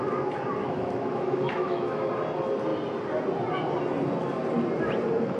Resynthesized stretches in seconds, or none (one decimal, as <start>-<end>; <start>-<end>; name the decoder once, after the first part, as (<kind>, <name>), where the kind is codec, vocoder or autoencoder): 0.6-2.1 (autoencoder, DAC-VAE)